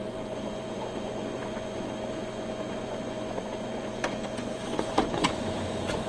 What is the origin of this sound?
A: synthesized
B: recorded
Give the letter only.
A